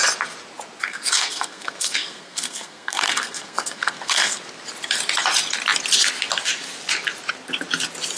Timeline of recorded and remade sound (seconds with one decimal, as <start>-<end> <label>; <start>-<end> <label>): 0.0-0.9 recorded; 0.9-4.4 remade; 4.4-8.2 recorded